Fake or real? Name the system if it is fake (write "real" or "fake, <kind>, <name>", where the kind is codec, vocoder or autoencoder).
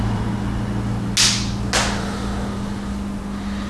real